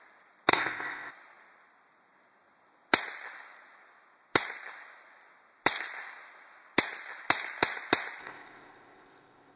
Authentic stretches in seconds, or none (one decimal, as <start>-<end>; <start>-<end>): 0.0-0.5; 1.1-8.2